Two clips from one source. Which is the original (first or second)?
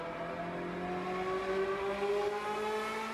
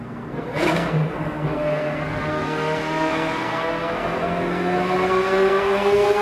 first